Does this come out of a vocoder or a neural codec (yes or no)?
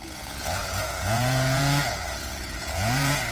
yes